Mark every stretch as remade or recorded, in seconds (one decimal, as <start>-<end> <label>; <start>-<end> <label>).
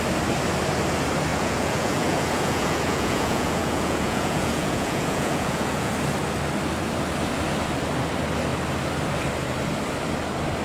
0.0-1.3 recorded; 1.3-5.9 remade; 5.9-10.6 recorded